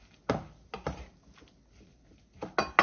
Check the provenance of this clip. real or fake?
real